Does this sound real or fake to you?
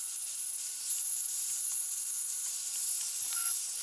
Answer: fake